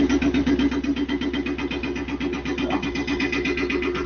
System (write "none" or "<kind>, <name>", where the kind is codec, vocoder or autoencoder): none